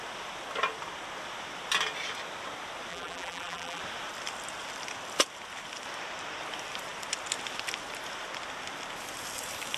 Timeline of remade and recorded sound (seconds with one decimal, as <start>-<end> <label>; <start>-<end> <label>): 0.0-2.9 recorded; 2.9-3.8 remade; 3.8-9.8 recorded